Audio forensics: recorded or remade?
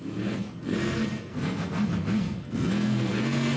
remade